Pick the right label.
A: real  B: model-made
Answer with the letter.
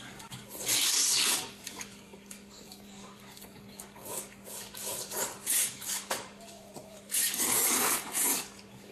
B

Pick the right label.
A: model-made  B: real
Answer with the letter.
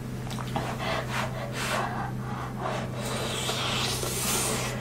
B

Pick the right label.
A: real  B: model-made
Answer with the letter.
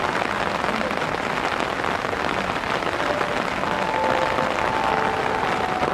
A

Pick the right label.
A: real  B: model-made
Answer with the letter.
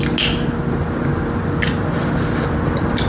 A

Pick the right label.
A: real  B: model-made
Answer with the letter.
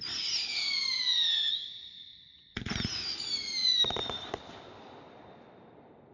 A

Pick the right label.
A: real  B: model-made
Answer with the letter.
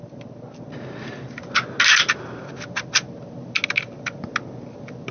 A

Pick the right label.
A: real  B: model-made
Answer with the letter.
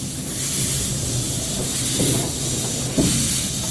A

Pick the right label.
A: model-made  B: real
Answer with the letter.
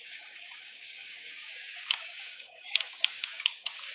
A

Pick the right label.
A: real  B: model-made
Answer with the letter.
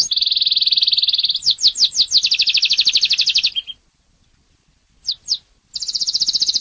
A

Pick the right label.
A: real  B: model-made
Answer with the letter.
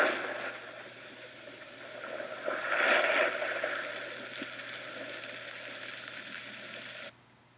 A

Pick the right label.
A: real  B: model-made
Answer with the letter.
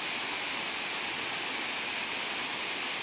A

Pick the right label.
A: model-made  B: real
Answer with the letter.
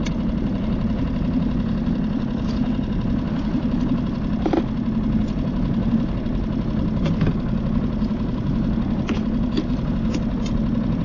B